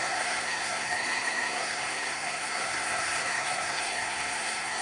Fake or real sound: fake